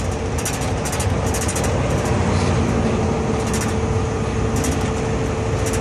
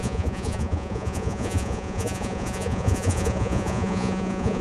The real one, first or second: first